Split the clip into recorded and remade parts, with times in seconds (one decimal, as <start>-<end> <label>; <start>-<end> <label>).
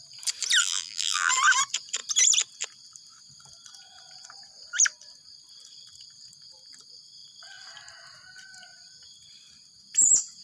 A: 0.0-0.6 recorded; 0.6-1.3 remade; 1.3-10.4 recorded